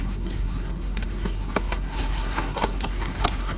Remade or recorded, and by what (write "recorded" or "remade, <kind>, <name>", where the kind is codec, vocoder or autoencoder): remade, codec, SNAC